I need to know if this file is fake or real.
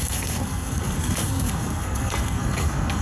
fake